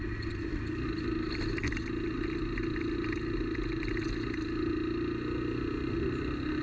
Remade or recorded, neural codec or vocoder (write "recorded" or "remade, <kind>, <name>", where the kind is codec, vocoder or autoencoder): recorded